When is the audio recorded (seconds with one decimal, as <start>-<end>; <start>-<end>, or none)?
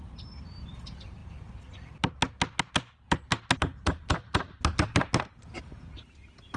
0.0-6.6